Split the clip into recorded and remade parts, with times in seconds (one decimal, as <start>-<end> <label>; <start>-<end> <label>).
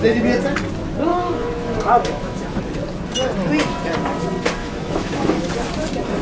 0.0-1.1 recorded; 1.1-2.6 remade; 2.6-4.6 recorded; 4.6-5.5 remade; 5.5-6.2 recorded